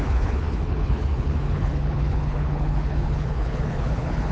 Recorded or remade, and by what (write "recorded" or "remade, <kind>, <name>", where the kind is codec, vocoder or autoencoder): remade, codec, HILCodec